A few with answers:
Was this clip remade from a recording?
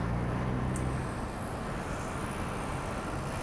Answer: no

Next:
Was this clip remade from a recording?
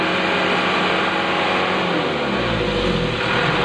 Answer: no